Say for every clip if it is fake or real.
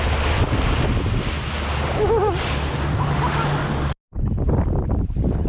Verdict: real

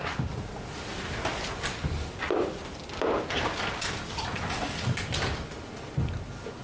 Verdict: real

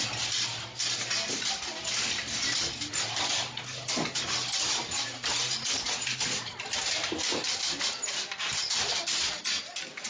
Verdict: real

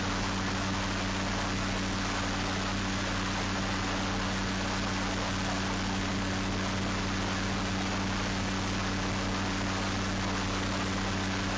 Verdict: real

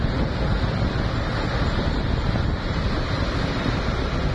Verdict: real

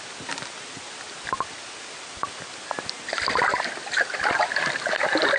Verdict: real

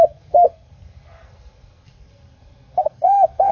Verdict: fake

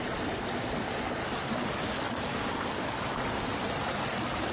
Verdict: real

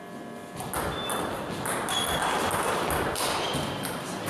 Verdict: real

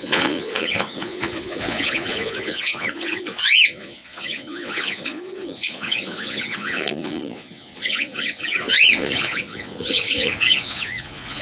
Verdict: fake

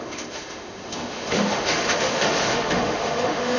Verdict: fake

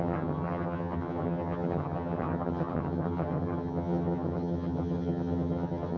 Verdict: fake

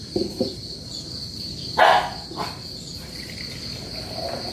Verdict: real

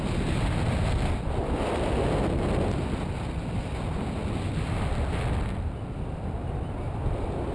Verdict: real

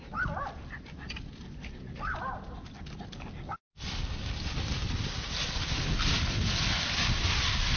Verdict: real